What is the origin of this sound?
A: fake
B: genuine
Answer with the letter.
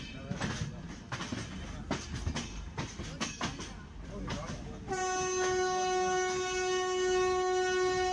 B